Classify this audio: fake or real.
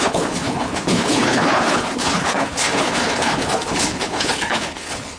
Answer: fake